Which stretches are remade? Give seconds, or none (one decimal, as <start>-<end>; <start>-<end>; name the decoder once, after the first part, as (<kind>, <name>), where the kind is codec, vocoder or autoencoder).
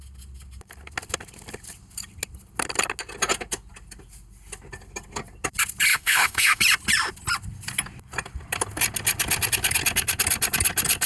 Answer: 5.9-6.6 (autoencoder, DAC-VAE)